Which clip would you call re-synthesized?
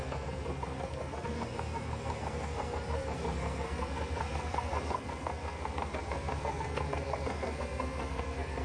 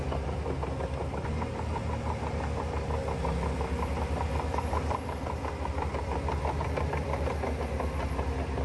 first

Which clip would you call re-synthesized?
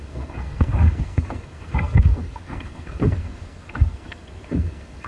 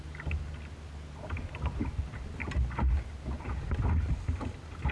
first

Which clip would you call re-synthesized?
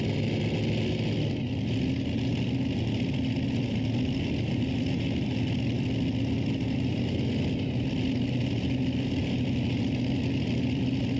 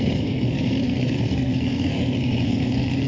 second